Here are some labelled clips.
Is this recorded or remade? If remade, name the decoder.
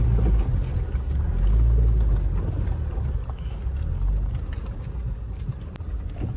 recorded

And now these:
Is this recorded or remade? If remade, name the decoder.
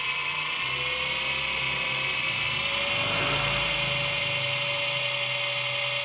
recorded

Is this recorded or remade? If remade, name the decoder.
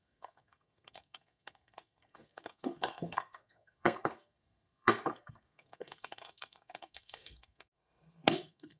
remade, codec, SNAC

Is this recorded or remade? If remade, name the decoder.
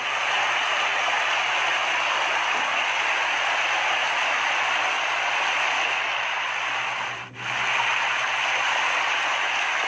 recorded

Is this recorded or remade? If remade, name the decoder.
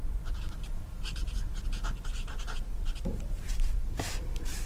remade, vocoder, BigVGAN v2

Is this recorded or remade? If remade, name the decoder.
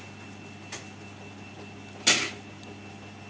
recorded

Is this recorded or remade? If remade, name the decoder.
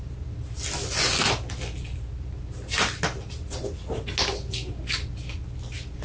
recorded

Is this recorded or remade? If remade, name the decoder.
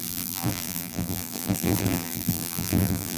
remade, vocoder, BigVGAN v2